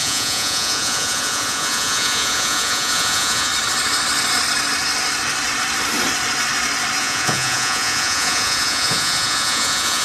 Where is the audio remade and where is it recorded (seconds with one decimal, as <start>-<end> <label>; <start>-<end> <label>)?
0.0-3.5 remade; 3.5-7.0 recorded; 7.0-10.0 remade